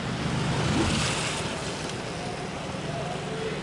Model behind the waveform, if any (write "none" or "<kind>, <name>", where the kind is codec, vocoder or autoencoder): none